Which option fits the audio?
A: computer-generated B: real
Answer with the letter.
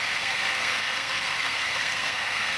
A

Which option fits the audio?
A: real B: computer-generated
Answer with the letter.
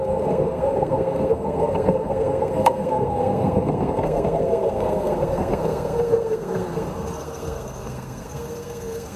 B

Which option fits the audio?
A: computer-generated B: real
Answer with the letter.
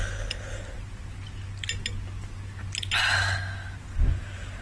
B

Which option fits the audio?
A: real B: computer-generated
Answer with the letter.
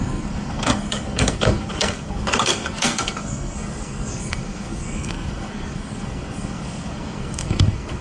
B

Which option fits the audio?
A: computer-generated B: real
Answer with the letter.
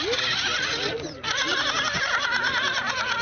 B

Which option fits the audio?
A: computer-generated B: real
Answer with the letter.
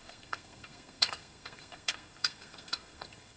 A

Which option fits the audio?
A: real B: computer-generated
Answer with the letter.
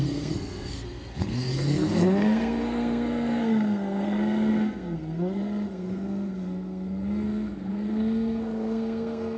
B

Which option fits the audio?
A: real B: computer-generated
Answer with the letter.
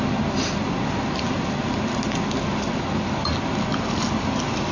A